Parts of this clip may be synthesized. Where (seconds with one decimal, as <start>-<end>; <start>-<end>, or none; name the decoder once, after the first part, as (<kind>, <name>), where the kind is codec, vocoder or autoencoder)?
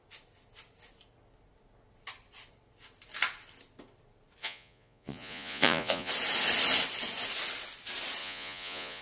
4.4-6.1 (vocoder, Vocos); 8.2-9.0